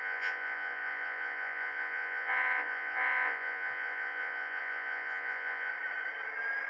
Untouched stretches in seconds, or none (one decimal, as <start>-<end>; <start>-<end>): 5.7-6.7